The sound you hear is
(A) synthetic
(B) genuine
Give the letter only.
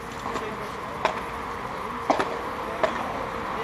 B